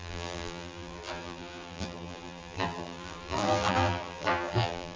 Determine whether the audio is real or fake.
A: fake